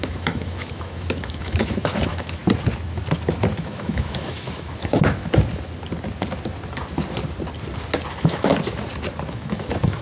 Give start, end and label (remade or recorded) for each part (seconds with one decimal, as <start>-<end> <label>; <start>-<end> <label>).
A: 0.0-2.4 remade; 2.4-3.6 recorded; 3.6-5.2 remade; 5.2-8.1 recorded; 8.1-8.5 remade; 8.5-9.3 recorded; 9.3-10.0 remade